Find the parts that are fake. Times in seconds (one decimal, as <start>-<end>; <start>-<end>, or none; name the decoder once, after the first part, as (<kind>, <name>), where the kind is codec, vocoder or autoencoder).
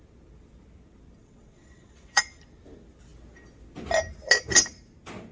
1.2-2.4 (vocoder, WaveNeXt)